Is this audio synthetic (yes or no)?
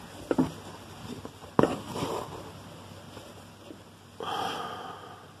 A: no